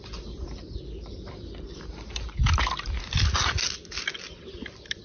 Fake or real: real